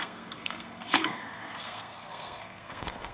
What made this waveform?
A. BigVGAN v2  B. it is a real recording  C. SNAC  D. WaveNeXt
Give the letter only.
C